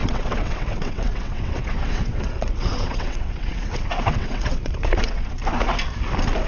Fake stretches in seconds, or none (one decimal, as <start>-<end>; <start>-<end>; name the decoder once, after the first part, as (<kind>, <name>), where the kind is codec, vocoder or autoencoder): 0.0-5.4 (vocoder, WaveNeXt)